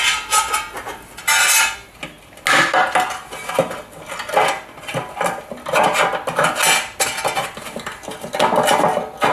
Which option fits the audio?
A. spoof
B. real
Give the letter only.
B